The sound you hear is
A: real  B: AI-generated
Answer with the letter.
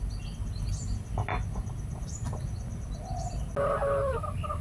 A